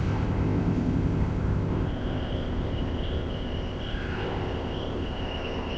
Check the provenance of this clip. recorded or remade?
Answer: remade